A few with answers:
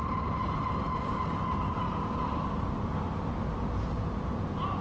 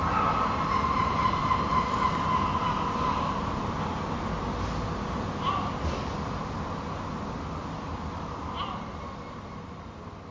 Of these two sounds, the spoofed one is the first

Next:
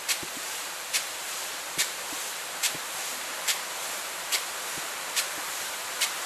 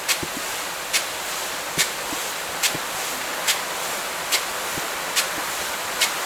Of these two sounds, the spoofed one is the first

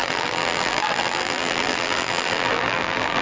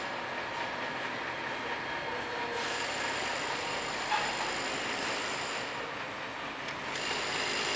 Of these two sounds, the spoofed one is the first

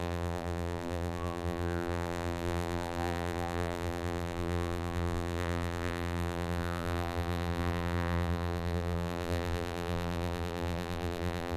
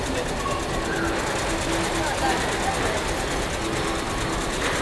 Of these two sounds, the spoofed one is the first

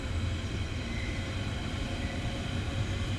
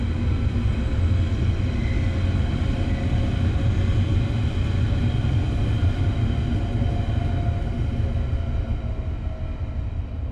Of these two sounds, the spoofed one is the first